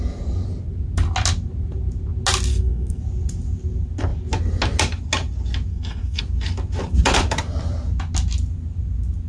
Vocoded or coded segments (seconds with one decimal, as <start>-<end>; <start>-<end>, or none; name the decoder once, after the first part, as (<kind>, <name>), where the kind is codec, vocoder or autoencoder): 2.5-3.0 (codec, SNAC); 5.7-6.2